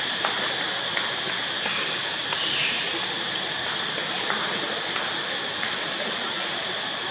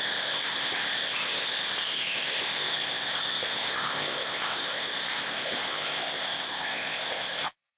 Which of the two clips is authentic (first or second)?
first